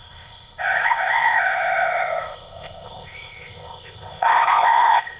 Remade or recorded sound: remade